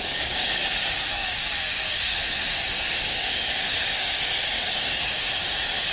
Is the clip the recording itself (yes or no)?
no